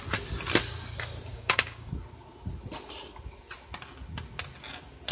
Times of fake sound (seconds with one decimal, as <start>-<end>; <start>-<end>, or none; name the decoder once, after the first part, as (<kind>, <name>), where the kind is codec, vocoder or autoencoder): 1.3-1.9 (codec, DAC)